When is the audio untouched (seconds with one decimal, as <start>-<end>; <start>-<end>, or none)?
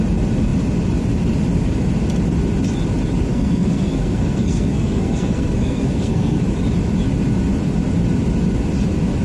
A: 0.0-3.3; 6.4-9.2